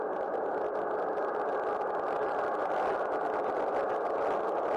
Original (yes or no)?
yes